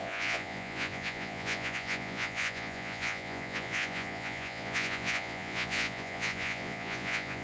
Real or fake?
fake